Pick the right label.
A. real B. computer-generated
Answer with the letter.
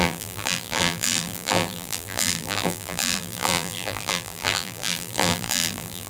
B